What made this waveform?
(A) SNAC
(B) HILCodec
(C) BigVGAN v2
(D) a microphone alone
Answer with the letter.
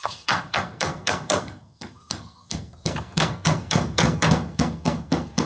A